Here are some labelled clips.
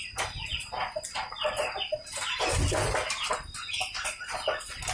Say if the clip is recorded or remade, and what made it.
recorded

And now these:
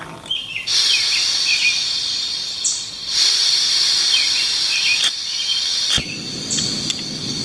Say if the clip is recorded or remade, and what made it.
recorded